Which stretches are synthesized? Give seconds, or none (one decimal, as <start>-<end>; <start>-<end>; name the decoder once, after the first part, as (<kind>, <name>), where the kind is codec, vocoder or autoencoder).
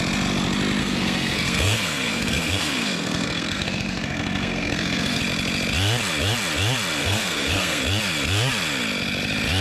0.8-5.2 (codec, SNAC); 7.0-7.8